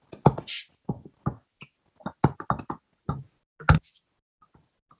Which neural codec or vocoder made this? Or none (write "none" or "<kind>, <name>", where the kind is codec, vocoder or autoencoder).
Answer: none